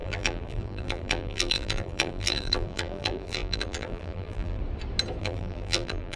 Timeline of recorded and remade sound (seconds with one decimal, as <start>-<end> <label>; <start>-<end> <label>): 0.0-4.6 remade; 4.6-5.2 recorded; 5.2-6.2 remade